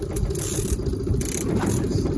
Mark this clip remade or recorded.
recorded